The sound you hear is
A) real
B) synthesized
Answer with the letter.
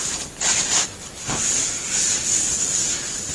A